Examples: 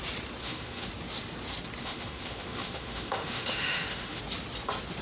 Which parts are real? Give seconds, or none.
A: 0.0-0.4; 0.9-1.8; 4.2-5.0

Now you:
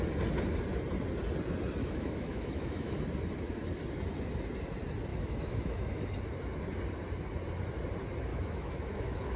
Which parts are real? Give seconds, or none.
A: 0.0-1.8; 3.0-5.1; 6.1-8.3

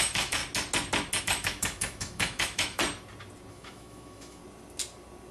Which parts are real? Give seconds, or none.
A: 0.4-1.2; 2.8-3.5; 4.4-5.3

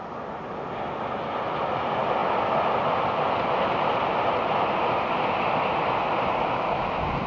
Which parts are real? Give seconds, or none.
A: 0.0-7.3

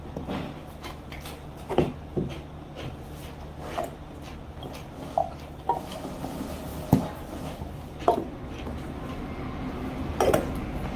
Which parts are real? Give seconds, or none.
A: 0.0-11.0

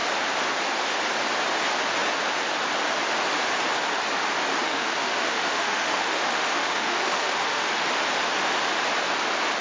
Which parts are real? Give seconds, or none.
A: 0.0-4.5; 7.7-9.6

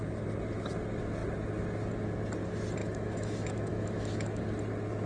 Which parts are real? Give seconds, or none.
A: 0.0-2.8; 4.4-5.1

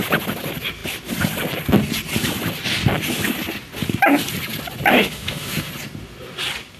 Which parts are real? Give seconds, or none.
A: 0.0-4.9; 5.7-6.8